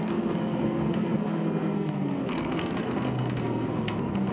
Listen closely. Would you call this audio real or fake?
fake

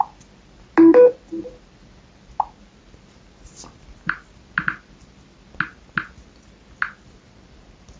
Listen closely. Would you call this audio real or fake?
real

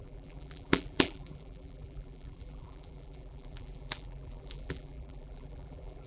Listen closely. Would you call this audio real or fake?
fake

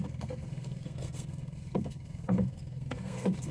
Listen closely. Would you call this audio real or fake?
fake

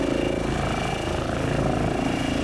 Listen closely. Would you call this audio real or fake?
real